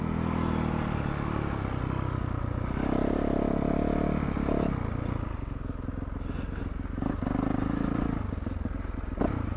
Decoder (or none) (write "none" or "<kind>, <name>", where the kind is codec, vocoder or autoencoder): none